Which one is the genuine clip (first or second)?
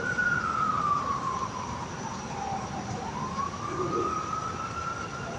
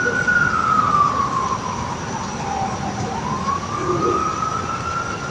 second